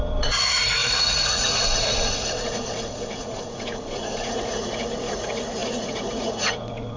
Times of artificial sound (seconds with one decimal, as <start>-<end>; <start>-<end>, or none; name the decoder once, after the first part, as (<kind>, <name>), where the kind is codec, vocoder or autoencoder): 0.0-7.0 (vocoder, Vocos)